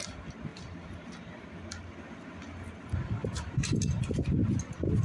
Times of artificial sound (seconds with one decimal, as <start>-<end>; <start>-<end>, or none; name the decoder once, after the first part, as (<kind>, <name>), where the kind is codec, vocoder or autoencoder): 0.5-1.9 (vocoder, BigVGAN v2); 3.2-4.6